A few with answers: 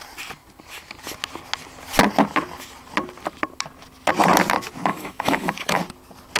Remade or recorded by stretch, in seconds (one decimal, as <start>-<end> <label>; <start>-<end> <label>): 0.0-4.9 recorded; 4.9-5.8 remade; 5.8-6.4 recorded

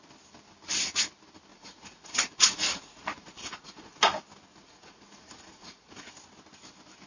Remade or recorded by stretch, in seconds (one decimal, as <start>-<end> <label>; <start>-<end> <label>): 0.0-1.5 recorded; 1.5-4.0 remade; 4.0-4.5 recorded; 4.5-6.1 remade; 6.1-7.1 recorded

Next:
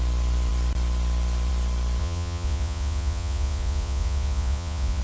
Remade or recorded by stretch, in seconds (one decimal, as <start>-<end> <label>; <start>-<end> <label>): 0.0-2.0 recorded; 2.0-5.0 remade

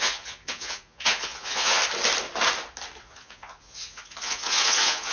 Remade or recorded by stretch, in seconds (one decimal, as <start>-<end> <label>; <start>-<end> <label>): 0.0-1.8 remade; 1.8-3.0 recorded; 3.0-5.1 remade